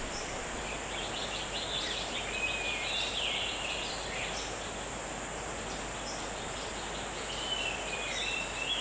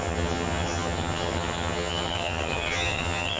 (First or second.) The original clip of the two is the first